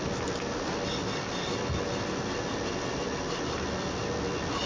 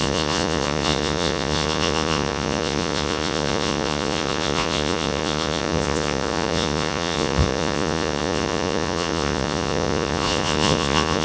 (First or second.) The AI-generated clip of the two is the second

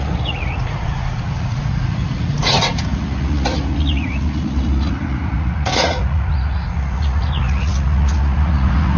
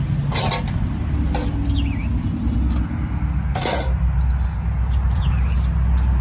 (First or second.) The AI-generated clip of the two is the first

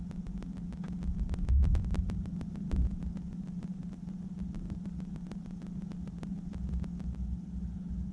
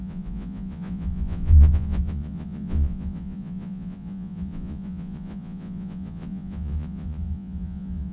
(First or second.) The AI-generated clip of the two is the second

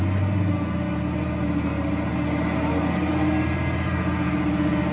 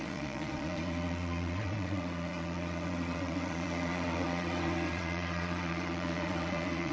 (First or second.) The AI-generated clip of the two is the second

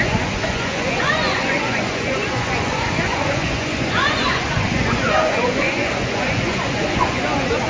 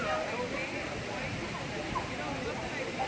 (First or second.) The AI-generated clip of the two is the first